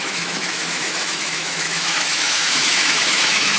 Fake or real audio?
fake